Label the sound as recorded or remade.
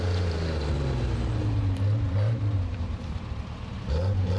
remade